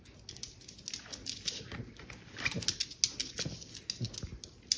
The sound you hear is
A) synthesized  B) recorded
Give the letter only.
B